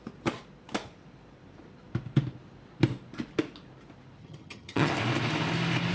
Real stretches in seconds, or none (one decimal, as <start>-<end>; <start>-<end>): 0.0-4.2; 4.9-5.9